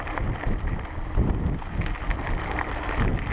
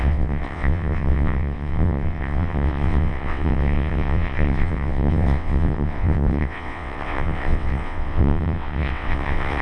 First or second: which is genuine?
first